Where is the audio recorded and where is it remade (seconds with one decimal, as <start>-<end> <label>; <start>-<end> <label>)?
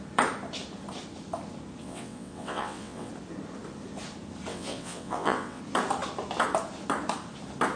0.0-1.8 recorded; 1.8-3.1 remade; 3.1-4.5 recorded; 4.5-5.6 remade; 5.6-7.8 recorded